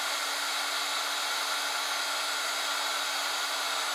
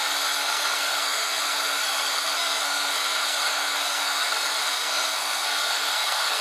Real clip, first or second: first